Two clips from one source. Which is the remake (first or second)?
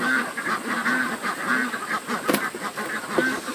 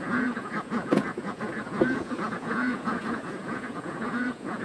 second